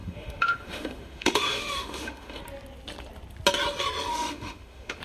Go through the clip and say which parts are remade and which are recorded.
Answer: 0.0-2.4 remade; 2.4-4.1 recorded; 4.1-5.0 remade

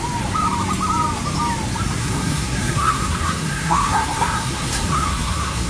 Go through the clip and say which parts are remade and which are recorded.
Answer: 0.0-2.0 recorded; 2.0-5.7 remade

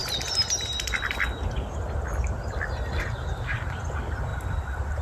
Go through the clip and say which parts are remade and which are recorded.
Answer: 0.0-3.0 recorded; 3.0-5.0 remade

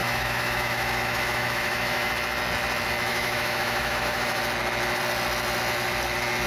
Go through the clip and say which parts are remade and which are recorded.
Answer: 0.0-2.1 remade; 2.1-3.1 recorded; 3.1-4.4 remade; 4.4-6.5 recorded

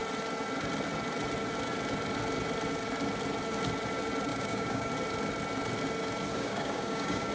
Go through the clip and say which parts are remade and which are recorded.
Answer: 0.0-4.3 recorded; 4.3-4.9 remade; 4.9-6.3 recorded; 6.3-7.3 remade

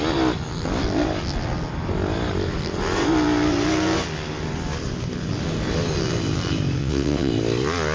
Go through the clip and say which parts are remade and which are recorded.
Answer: 0.0-6.8 recorded; 6.8-7.3 remade; 7.3-7.9 recorded